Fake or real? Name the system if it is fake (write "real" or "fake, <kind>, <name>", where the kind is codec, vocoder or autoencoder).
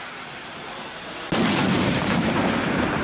real